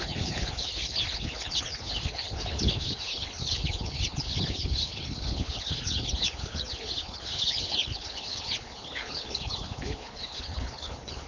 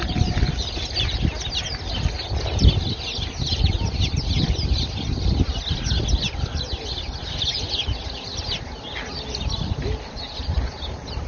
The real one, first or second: second